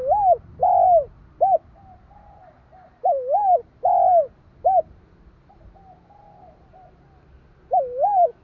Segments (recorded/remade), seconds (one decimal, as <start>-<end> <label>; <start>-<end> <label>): 0.0-8.4 recorded